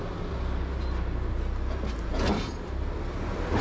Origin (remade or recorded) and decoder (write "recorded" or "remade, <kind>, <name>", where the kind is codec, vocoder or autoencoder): recorded